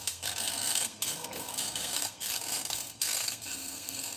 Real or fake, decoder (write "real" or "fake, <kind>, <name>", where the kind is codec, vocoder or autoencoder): fake, codec, SNAC